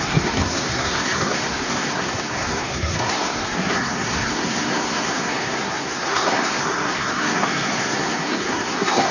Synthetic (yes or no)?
yes